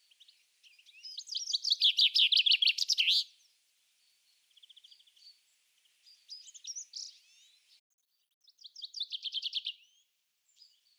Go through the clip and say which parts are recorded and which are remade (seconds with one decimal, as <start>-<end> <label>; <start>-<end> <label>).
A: 0.0-9.2 recorded; 9.2-11.0 remade